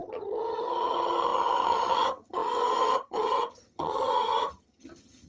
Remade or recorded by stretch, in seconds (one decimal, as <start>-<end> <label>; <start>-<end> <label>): 0.0-5.3 remade